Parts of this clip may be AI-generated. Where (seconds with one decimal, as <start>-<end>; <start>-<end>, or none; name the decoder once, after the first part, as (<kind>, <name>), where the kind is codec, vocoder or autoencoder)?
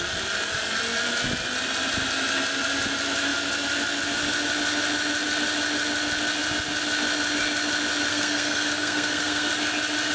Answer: 8.1-9.5 (codec, SNAC)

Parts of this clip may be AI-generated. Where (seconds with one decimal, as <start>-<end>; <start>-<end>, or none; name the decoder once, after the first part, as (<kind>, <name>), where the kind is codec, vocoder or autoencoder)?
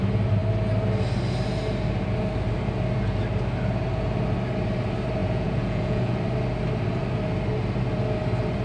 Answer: 5.2-6.2 (vocoder, Vocos)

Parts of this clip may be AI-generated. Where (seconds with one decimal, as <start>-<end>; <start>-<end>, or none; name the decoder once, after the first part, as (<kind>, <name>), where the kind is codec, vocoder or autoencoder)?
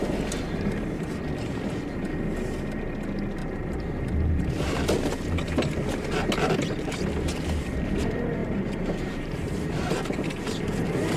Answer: 3.4-4.8 (vocoder, BigVGAN v2); 8.4-9.9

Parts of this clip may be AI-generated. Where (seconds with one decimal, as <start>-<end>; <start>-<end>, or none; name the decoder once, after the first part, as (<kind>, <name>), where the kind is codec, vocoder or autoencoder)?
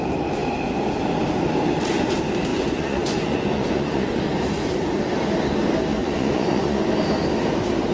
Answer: 2.5-4.2 (vocoder, Vocos); 5.9-6.8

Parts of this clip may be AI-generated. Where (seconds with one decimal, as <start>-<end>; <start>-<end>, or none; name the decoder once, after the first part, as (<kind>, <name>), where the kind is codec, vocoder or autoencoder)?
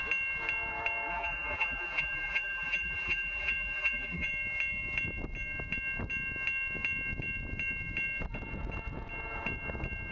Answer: 1.1-4.3 (vocoder, BigVGAN v2)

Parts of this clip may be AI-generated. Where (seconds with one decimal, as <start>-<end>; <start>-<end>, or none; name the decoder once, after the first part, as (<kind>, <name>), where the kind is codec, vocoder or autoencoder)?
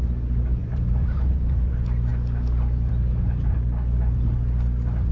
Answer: 0.6-1.7 (vocoder, BigVGAN v2)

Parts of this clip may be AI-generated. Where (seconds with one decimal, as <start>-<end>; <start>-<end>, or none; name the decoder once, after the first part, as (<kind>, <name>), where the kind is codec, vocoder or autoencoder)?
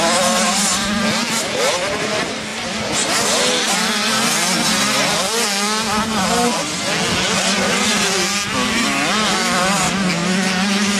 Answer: none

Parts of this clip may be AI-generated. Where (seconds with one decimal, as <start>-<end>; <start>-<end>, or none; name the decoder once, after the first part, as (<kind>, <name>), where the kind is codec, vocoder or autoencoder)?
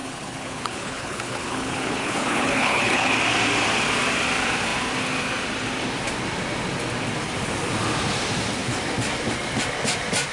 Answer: 0.0-3.1 (codec, HILCodec)